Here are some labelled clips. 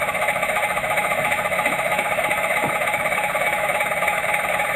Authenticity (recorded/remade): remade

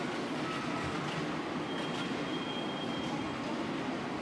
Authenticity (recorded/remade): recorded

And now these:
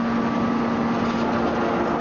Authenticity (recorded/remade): recorded